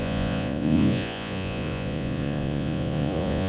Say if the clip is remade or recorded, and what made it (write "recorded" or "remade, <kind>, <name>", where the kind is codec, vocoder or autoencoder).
remade, vocoder, Vocos